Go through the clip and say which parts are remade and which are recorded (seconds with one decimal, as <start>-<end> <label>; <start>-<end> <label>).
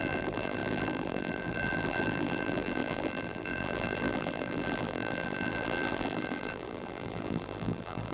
0.0-8.1 remade